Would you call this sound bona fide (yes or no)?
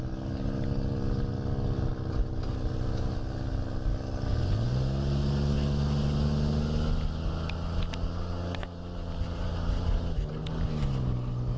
yes